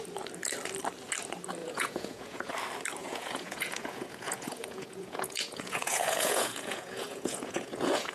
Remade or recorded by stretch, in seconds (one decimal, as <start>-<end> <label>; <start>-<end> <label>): 0.0-1.6 recorded; 1.6-2.5 remade; 2.5-3.0 recorded; 3.0-8.1 remade